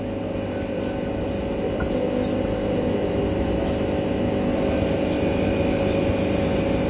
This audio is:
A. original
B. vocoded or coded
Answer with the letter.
A